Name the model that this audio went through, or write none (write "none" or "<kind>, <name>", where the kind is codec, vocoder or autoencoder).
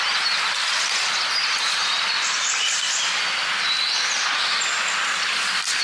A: none